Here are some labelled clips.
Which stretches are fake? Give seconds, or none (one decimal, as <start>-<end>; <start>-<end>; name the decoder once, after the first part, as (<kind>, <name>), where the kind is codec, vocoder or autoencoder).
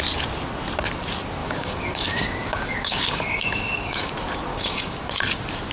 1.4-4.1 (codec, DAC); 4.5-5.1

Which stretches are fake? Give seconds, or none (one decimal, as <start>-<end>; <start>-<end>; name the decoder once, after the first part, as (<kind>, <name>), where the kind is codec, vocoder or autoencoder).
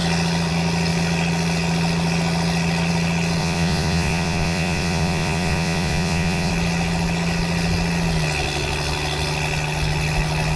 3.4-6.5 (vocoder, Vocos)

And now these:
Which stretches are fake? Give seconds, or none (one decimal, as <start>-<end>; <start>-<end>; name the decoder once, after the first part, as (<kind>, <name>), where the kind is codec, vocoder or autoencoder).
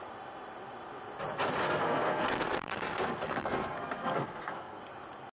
1.6-4.8 (codec, SNAC)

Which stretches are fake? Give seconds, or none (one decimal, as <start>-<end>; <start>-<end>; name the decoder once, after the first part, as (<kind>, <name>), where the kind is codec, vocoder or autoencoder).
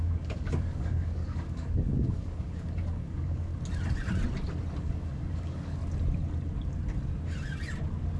0.0-3.5 (codec, DAC); 4.8-5.8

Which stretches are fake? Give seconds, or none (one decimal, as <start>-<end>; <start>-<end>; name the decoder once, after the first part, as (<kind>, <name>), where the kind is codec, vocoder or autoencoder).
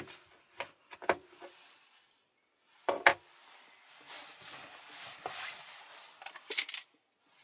none